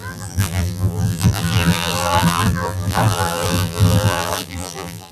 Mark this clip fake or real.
fake